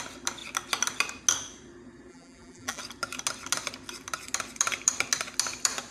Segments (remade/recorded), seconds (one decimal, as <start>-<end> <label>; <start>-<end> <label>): 0.0-2.1 recorded; 2.1-2.8 remade; 2.8-5.9 recorded